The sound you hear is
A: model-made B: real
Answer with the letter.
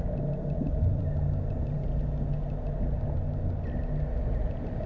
B